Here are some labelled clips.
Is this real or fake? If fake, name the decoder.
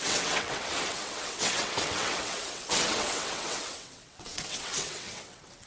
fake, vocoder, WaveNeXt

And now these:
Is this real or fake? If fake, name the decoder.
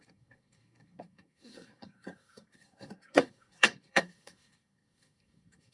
fake, codec, SNAC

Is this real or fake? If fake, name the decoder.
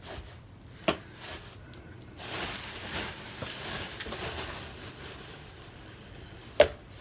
real